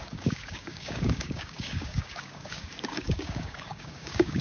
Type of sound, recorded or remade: remade